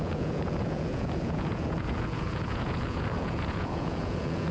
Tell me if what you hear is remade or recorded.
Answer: remade